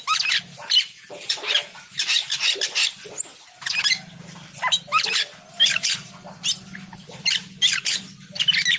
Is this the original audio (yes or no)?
yes